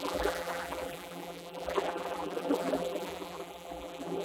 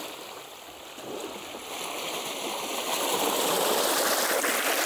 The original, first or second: second